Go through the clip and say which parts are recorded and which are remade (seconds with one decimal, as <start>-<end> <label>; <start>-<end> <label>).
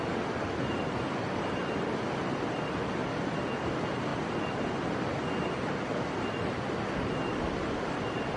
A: 0.0-8.4 recorded